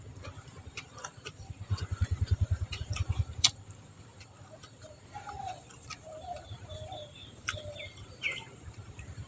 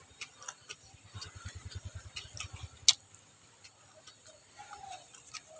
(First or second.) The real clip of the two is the second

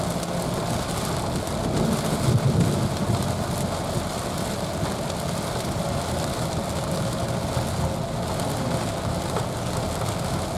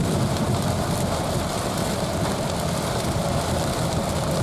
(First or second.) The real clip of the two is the first